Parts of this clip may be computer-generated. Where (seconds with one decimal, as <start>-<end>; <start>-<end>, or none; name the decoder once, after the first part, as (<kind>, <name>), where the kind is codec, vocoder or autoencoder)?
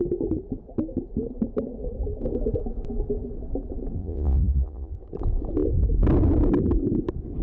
4.0-4.9 (vocoder, Vocos)